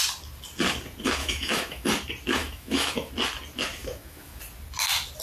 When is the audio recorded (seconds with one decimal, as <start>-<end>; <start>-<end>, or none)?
0.0-1.2; 1.9-2.4; 3.1-3.8; 4.4-5.2